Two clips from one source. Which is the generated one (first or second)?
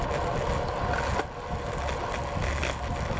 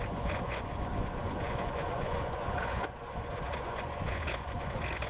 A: second